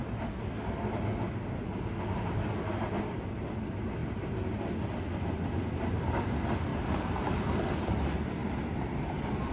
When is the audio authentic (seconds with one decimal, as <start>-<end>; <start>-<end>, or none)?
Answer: 0.0-8.4